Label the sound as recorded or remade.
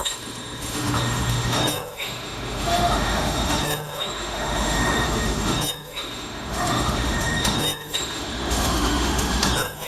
remade